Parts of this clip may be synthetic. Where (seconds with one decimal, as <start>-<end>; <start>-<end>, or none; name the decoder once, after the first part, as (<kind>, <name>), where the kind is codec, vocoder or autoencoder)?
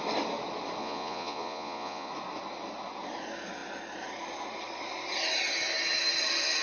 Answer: 0.8-2.1 (vocoder, Vocos)